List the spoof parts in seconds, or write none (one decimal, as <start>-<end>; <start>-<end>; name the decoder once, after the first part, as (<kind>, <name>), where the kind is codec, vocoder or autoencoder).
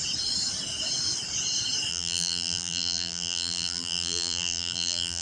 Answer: 1.9-5.2 (vocoder, BigVGAN v2)